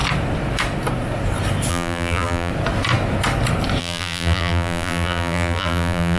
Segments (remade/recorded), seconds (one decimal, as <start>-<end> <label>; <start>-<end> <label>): 0.0-1.7 recorded; 1.7-2.5 remade; 2.5-3.8 recorded; 3.8-6.2 remade